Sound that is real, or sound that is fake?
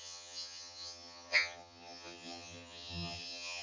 fake